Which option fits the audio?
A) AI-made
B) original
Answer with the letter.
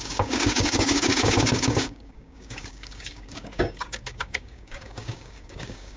A